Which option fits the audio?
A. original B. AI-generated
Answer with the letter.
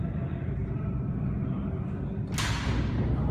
A